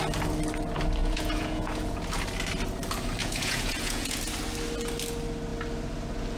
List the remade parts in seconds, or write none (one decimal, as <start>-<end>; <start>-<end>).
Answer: 1.0-2.0; 3.2-4.2